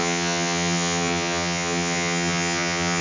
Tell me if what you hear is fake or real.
fake